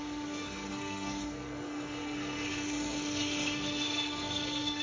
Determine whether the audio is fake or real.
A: fake